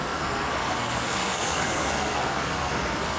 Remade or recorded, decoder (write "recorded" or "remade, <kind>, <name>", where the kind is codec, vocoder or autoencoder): remade, codec, SNAC